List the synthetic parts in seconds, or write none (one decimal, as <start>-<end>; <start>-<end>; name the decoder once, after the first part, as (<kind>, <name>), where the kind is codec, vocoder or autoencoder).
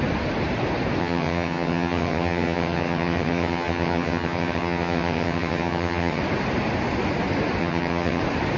1.0-6.2 (vocoder, HiFi-GAN); 7.6-8.2